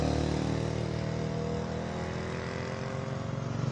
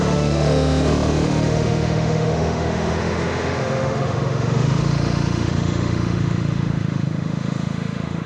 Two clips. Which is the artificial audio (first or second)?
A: second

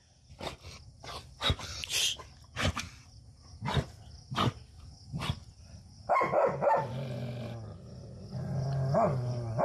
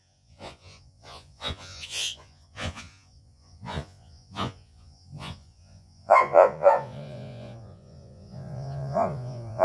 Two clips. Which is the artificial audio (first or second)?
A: second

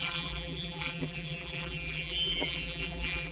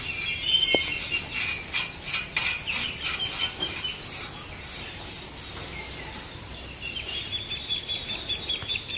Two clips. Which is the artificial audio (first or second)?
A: first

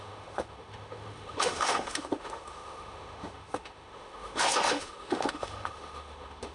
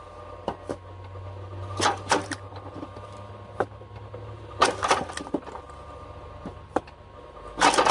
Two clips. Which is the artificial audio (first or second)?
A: first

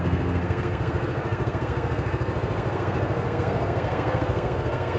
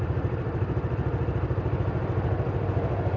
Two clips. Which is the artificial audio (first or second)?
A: first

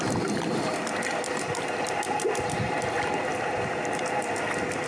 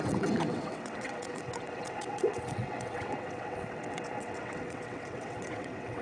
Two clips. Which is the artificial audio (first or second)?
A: second